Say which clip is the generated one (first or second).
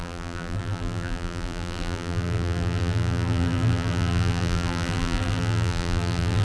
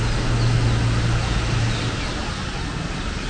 first